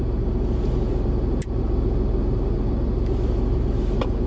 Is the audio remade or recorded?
recorded